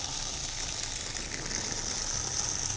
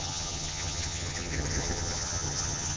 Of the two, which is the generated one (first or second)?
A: second